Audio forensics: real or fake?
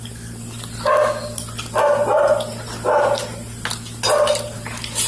real